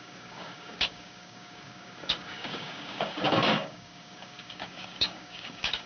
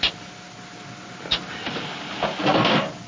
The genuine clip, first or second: second